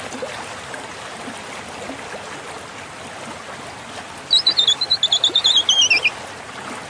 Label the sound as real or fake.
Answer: real